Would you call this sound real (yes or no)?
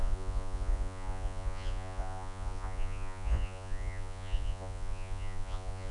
no